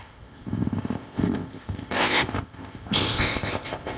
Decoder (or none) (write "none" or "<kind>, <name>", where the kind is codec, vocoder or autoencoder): codec, ZipCodec